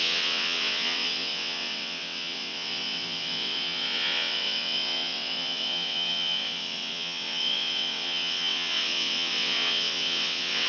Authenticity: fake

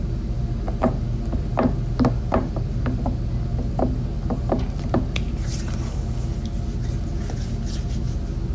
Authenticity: real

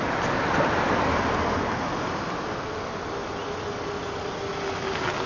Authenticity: real